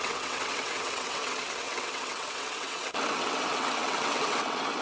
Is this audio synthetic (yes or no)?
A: yes